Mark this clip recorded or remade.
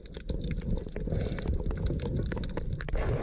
recorded